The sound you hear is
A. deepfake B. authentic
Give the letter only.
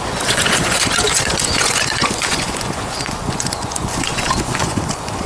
A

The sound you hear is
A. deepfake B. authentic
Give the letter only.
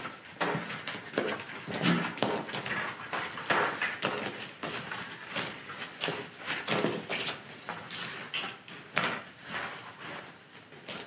B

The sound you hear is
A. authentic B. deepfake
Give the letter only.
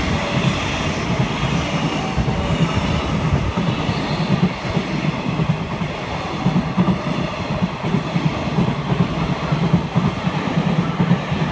A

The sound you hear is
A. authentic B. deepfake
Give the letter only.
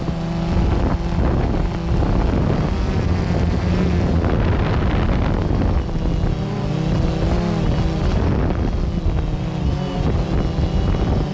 A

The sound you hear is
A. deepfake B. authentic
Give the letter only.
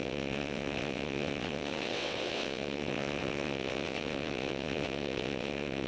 A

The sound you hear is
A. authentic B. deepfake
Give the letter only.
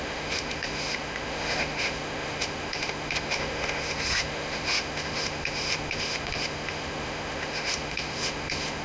B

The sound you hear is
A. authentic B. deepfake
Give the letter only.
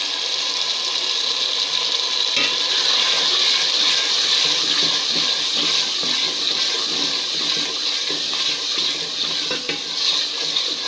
A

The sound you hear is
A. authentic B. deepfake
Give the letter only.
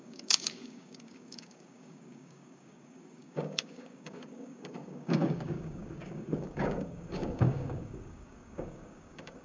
B